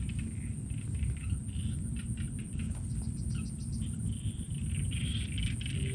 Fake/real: real